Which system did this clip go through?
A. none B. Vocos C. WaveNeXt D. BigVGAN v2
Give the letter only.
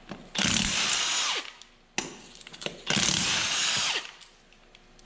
A